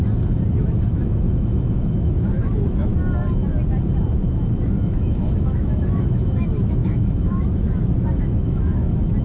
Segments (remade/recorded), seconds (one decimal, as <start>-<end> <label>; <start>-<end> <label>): 0.0-0.6 recorded; 0.6-2.9 remade; 2.9-4.6 recorded; 4.6-9.2 remade